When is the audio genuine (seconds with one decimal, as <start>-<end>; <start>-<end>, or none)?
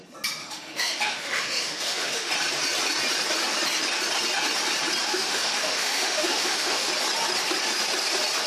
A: 0.0-0.4; 2.3-5.1; 6.9-8.5